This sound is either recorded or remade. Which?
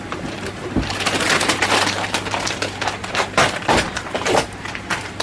remade